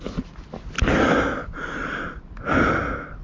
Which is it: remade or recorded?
recorded